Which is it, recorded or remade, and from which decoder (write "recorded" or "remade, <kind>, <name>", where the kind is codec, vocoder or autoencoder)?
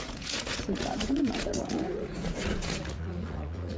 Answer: remade, vocoder, Vocos